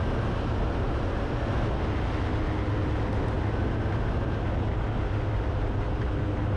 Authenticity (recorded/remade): recorded